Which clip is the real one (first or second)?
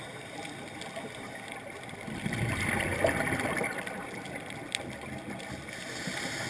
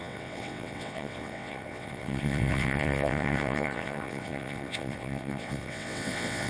first